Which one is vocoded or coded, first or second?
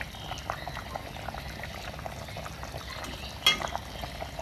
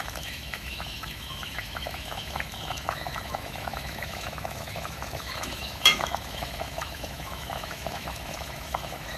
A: second